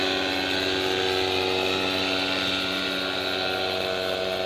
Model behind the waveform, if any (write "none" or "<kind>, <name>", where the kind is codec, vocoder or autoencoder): none